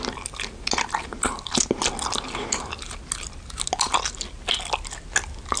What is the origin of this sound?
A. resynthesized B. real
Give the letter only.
B